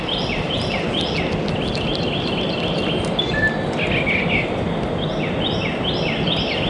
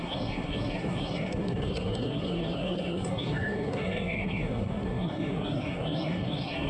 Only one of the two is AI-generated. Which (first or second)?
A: second